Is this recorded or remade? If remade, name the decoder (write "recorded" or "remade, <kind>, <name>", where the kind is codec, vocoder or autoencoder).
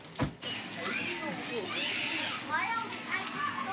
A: recorded